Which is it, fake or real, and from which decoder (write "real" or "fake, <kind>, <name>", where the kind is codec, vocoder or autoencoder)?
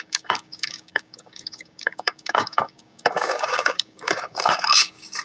fake, codec, DAC